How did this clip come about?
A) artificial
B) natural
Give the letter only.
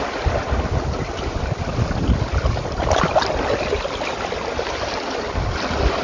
B